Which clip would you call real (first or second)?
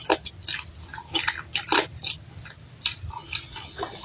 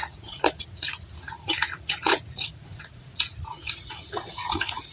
first